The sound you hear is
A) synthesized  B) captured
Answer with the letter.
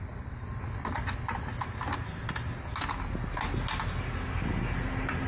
B